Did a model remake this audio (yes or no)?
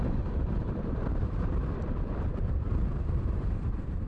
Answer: yes